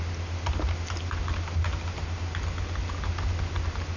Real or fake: real